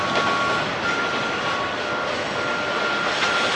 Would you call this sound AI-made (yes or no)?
no